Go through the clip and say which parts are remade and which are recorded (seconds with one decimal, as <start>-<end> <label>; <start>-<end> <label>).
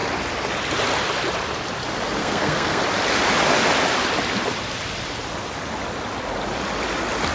0.0-2.2 recorded; 2.2-2.8 remade; 2.8-7.3 recorded